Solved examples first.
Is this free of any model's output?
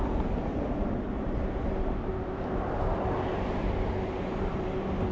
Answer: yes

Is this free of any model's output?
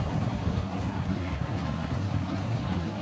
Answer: no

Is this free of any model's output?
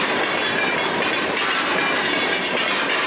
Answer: yes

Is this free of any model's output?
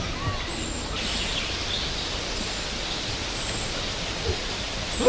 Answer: yes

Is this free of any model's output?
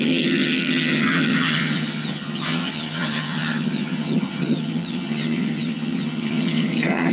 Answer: no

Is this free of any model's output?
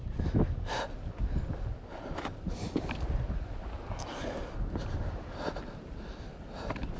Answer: yes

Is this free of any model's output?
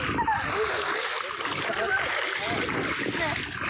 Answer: yes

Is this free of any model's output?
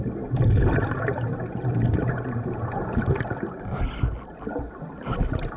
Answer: yes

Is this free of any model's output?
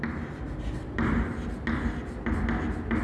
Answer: yes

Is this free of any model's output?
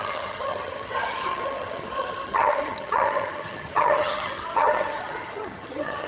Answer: no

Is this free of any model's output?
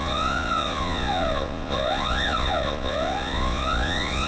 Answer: no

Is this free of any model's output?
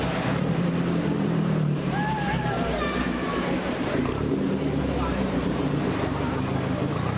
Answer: no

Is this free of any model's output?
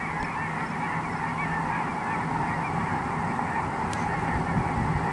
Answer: yes